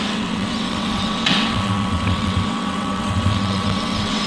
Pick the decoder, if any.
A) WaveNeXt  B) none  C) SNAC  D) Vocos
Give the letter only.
A